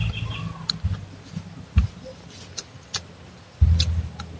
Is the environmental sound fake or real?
real